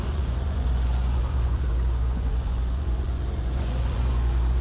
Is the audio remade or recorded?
remade